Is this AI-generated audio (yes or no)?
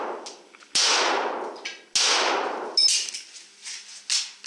no